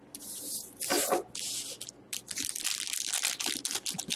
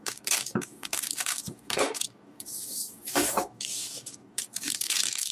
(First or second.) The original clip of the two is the first